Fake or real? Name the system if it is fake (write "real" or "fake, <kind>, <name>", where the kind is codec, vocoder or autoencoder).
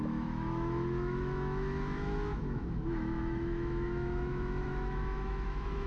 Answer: fake, autoencoder, DAC-VAE